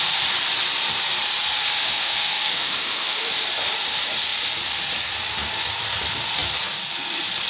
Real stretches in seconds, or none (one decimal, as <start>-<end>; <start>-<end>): 0.0-1.8; 3.3-7.5